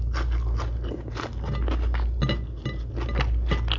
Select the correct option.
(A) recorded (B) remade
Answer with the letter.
A